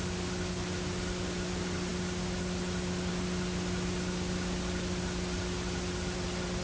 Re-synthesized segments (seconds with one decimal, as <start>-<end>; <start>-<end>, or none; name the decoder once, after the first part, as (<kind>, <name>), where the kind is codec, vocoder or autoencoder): none